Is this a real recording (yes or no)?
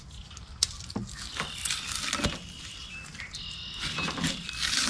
yes